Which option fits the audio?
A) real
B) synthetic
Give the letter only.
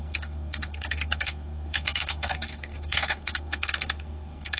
B